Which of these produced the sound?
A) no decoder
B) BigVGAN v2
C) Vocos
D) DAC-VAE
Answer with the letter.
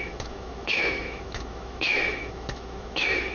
D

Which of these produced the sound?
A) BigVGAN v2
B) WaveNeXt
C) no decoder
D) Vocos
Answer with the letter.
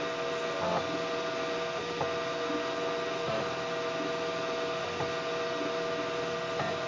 C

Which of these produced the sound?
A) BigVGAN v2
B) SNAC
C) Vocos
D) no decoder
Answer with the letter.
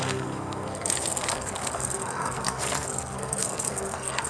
B